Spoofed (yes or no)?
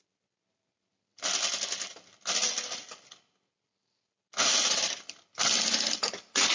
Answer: no